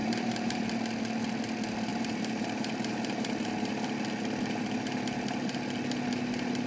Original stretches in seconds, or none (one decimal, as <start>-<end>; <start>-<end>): 0.7-1.9; 3.7-6.7